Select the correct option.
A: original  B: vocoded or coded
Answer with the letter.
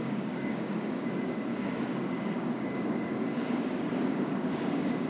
B